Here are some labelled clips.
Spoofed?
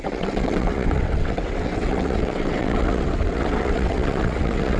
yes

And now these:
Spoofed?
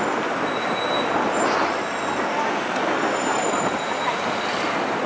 no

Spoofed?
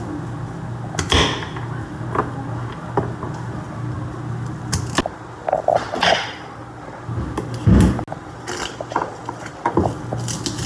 no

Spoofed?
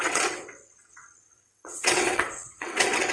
yes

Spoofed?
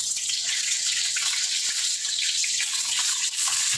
yes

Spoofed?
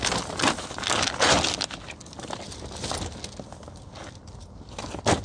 no